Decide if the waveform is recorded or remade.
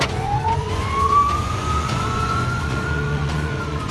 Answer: remade